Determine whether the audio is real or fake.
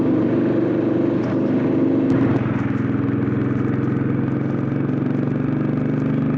real